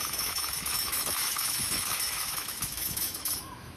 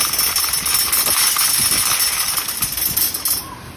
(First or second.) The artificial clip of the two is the first